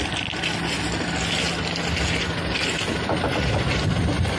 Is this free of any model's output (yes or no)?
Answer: yes